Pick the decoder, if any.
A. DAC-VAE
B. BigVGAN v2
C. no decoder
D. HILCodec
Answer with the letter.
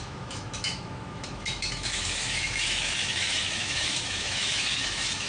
A